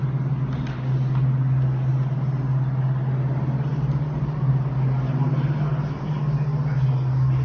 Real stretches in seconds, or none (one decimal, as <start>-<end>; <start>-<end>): 0.0-7.4